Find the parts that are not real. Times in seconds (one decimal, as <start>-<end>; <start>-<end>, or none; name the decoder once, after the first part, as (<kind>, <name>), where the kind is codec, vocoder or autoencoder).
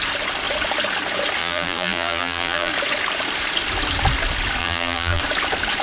1.4-2.7 (vocoder, BigVGAN v2); 4.6-5.2